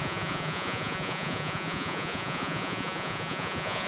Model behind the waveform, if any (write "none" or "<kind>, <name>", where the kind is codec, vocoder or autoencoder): vocoder, Vocos